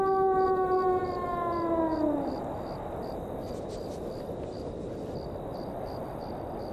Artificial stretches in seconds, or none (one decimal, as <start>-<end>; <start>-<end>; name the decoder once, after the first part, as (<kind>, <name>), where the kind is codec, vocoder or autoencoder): 5.5-6.7 (vocoder, BigVGAN v2)